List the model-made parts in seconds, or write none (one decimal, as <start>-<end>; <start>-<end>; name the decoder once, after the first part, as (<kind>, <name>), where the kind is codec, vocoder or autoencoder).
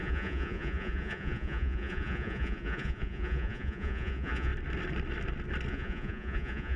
0.0-4.5 (vocoder, Vocos); 5.7-6.8